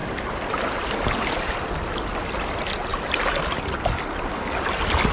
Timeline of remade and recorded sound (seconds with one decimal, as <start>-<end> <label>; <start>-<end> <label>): 0.0-5.1 recorded